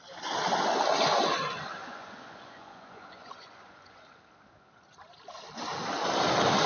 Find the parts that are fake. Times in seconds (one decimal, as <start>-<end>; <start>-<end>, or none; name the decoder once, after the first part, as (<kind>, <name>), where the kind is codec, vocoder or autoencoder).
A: 1.8-4.2 (vocoder, Vocos)